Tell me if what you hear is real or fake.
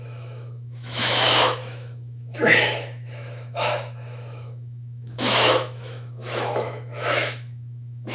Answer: fake